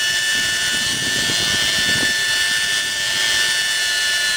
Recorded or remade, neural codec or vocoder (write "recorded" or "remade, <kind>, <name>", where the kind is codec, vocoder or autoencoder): recorded